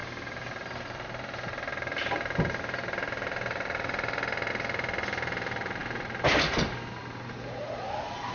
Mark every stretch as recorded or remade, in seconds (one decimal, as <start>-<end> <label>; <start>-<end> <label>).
0.0-8.3 recorded